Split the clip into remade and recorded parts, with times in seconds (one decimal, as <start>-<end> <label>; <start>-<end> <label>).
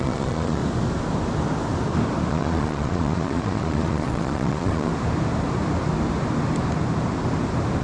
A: 0.0-0.6 remade; 0.6-2.3 recorded; 2.3-4.9 remade; 4.9-7.8 recorded